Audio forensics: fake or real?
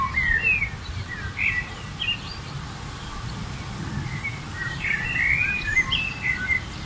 real